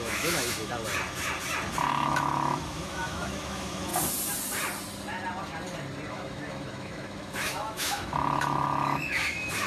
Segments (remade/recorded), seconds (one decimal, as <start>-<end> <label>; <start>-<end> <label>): 0.0-0.7 remade; 0.7-1.9 recorded; 1.9-3.9 remade; 3.9-6.1 recorded; 6.1-9.7 remade